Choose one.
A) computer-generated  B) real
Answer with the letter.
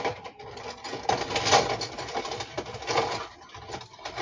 B